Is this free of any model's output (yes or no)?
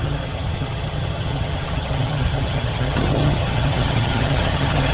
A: no